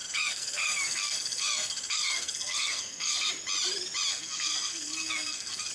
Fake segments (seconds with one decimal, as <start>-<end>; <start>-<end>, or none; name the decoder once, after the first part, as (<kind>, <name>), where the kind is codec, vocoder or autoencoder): 0.0-3.3 (codec, SNAC); 4.1-5.7

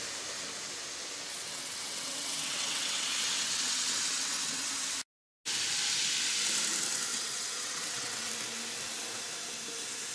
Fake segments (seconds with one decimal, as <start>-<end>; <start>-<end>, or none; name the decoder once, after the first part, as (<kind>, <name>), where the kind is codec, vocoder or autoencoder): 1.3-4.7 (vocoder, WaveNeXt); 7.1-8.3

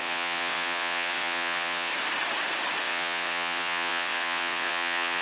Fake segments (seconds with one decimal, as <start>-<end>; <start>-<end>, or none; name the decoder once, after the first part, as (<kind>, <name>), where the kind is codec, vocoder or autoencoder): 0.0-1.9 (vocoder, WaveNeXt); 2.8-5.2